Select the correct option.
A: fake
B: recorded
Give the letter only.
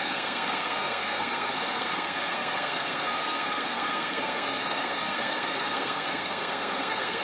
A